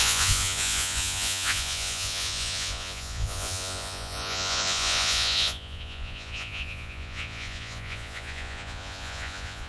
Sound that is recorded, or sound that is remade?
remade